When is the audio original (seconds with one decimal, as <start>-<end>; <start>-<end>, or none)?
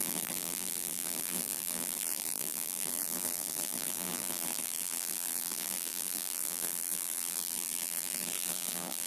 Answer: none